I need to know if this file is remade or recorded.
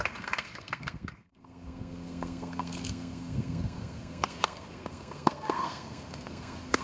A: remade